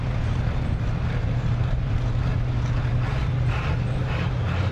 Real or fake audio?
fake